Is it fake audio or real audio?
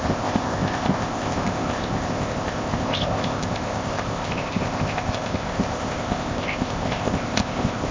fake